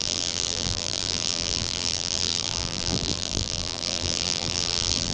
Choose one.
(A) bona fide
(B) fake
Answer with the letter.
B